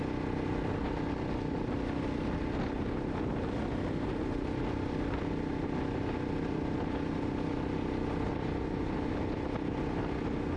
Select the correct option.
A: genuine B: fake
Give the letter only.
A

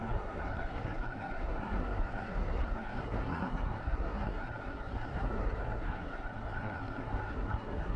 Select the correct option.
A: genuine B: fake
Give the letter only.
B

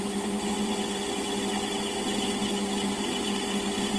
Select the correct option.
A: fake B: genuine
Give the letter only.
B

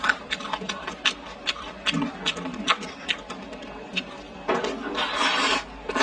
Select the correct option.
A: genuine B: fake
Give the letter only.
A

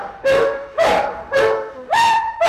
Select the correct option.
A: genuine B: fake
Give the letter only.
B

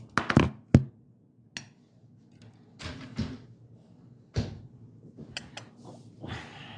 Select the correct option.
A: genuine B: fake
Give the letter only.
A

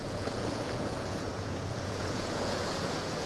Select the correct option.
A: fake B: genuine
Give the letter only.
A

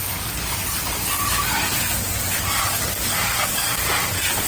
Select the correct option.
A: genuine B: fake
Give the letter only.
A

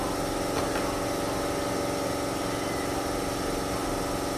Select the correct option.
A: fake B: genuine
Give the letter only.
B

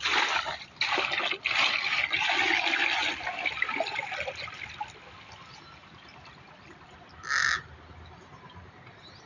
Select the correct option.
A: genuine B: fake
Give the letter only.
A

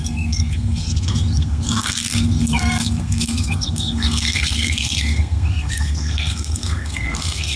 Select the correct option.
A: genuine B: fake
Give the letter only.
B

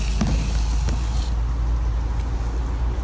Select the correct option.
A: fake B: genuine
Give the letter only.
B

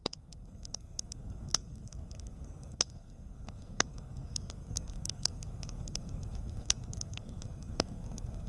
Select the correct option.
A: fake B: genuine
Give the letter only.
A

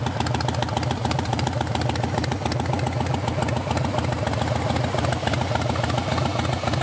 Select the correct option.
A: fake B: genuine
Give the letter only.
B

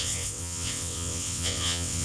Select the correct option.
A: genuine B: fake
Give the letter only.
B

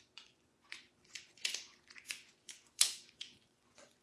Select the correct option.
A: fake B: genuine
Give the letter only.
A